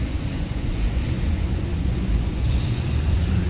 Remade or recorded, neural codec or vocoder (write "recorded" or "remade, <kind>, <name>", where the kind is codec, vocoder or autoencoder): remade, vocoder, Vocos